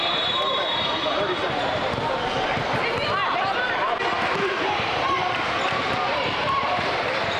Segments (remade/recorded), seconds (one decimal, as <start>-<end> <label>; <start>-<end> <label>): 0.0-1.8 remade; 1.8-5.8 recorded; 5.8-7.4 remade